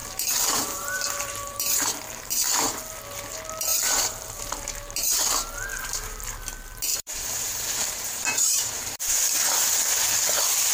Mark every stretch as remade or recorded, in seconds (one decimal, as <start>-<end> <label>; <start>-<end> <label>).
0.0-2.8 remade; 2.8-3.7 recorded; 3.7-5.2 remade; 5.2-5.7 recorded; 5.7-6.2 remade; 6.2-6.9 recorded; 6.9-9.3 remade; 9.3-10.7 recorded